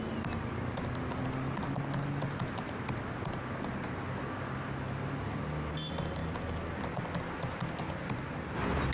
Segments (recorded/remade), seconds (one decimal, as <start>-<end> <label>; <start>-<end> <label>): 0.0-8.9 recorded